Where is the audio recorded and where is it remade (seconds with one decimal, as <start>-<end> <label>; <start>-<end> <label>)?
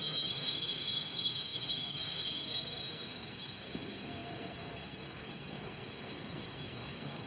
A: 0.0-7.3 remade